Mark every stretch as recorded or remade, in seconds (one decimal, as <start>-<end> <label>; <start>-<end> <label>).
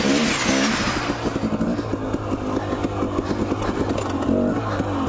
0.0-5.1 recorded